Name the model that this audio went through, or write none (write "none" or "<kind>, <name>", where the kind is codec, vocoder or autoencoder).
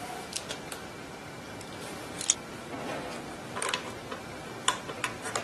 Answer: none